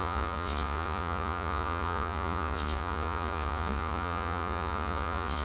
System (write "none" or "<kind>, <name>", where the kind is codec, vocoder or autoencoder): vocoder, Vocos